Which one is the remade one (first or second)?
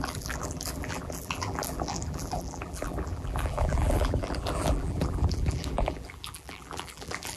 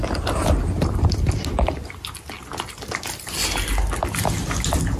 first